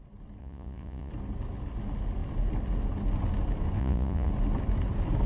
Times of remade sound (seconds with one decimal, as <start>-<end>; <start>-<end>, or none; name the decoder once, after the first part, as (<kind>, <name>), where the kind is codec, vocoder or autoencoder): 0.4-1.1 (vocoder, Vocos); 3.8-4.3